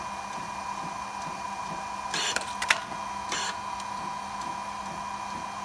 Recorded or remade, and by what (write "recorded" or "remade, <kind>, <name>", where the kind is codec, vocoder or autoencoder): recorded